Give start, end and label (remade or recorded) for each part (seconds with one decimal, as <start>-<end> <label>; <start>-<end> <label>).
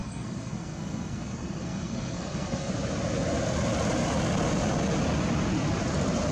0.0-2.7 remade; 2.7-6.3 recorded